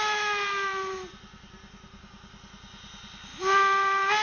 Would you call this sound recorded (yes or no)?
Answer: yes